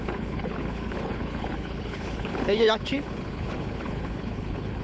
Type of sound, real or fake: fake